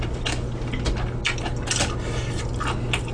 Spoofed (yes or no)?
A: no